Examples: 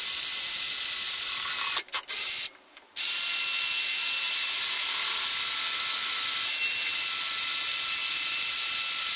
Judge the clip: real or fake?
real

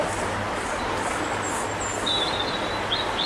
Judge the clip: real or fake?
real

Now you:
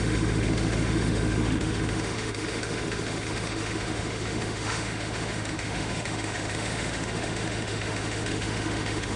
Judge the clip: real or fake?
fake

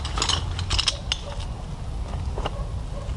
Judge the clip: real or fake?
real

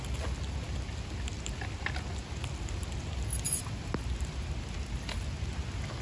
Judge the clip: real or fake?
real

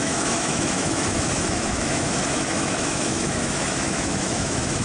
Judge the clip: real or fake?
fake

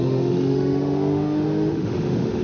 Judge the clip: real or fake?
fake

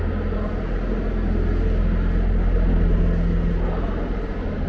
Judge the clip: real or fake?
real